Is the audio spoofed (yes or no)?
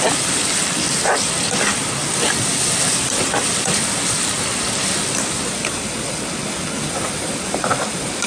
no